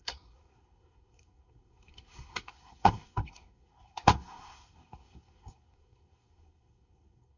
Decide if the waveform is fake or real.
fake